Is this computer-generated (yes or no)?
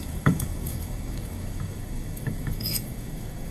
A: yes